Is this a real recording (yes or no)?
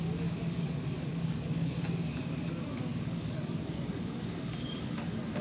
no